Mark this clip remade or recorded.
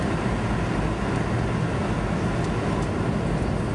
recorded